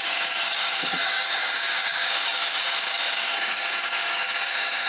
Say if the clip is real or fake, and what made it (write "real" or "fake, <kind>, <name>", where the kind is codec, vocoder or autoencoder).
fake, codec, DAC